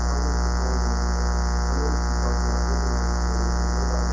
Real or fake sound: real